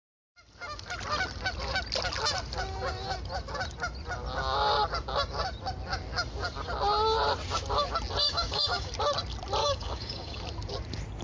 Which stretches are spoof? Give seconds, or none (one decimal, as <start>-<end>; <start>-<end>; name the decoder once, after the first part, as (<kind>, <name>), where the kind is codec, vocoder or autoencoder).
8.2-8.9 (codec, DAC); 9.6-10.4